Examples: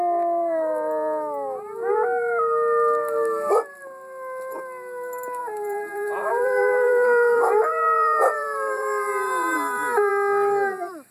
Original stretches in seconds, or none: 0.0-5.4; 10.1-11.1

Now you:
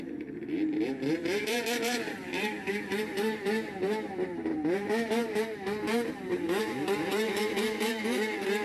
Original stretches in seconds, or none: none